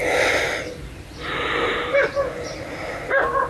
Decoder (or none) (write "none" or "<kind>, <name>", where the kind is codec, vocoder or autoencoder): vocoder, BigVGAN v2